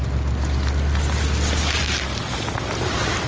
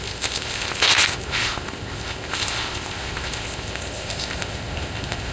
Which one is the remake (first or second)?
second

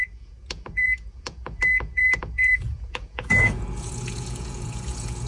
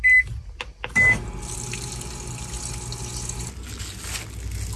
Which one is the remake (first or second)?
first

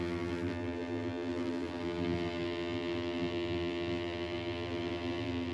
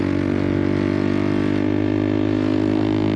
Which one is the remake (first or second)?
first